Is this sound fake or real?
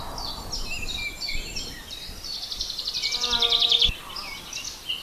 real